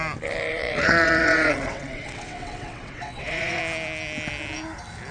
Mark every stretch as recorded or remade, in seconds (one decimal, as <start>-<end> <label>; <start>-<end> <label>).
0.0-0.5 recorded; 0.5-3.6 remade; 3.6-5.1 recorded